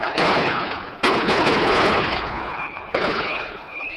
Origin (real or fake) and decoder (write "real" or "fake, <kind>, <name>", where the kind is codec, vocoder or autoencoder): fake, codec, HILCodec